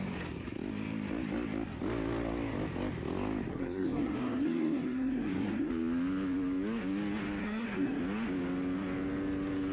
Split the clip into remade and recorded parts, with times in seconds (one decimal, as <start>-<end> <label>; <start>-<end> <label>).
0.0-3.5 recorded; 3.5-5.7 remade; 5.7-7.4 recorded; 7.4-8.0 remade; 8.0-9.7 recorded